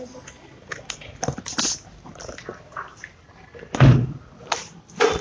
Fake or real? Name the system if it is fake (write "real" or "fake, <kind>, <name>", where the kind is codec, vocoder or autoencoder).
real